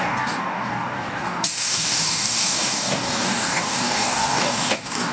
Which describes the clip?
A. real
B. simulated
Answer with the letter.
B